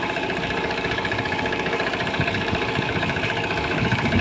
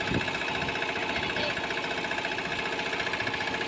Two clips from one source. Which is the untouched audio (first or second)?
second